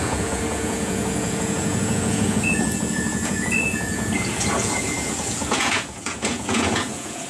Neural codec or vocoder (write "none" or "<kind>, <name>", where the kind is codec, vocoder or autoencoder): vocoder, Vocos